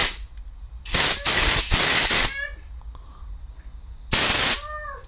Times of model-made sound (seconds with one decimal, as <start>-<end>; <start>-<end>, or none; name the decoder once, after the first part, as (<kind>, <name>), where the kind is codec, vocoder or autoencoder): none